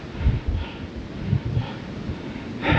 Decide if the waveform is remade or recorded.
recorded